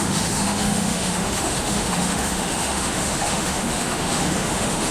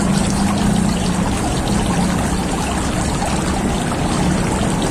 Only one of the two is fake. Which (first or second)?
first